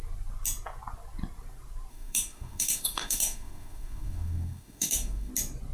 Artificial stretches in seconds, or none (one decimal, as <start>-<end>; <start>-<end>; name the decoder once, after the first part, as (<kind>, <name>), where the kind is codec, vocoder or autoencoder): 1.9-5.3 (autoencoder, DAC-VAE)